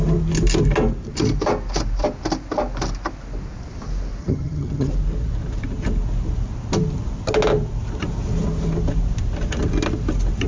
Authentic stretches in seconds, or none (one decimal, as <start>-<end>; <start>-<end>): 0.0-4.2; 4.9-10.5